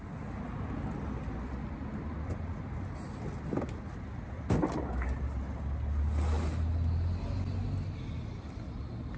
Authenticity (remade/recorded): recorded